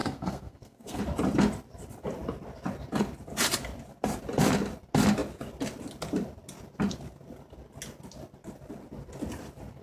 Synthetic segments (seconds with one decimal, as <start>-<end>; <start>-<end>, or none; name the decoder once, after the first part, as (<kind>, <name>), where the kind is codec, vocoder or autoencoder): 0.0-1.0 (codec, SNAC)